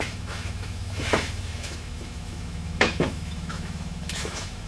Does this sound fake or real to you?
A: fake